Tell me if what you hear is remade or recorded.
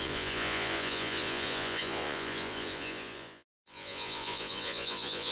remade